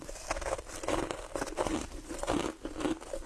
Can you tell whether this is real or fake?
real